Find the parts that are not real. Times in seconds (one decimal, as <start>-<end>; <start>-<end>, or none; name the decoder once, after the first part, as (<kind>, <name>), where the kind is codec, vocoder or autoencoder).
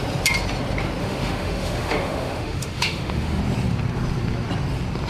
1.0-3.4 (autoencoder, DAC-VAE)